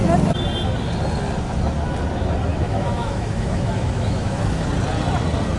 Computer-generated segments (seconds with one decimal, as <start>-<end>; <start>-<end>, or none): 2.5-4.7